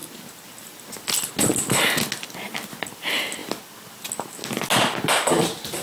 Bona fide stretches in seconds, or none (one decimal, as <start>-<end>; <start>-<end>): 0.0-5.8